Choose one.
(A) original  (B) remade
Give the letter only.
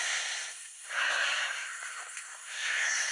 B